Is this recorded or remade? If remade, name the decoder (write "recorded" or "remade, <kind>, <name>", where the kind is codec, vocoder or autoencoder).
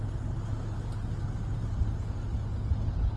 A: recorded